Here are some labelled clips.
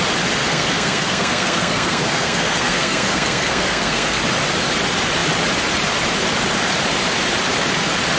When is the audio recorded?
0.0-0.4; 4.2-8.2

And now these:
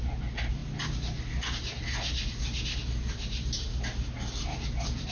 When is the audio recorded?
0.0-5.1

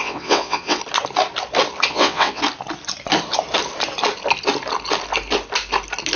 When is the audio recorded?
0.8-1.9; 2.4-6.2